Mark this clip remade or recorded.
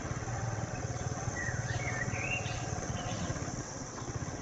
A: remade